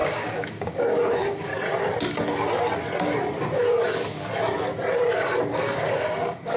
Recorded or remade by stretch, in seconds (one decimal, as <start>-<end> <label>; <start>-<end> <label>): 0.0-1.5 remade; 1.5-5.5 recorded; 5.5-6.6 remade